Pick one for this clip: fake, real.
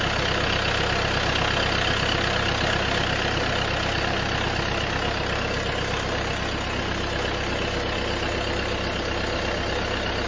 real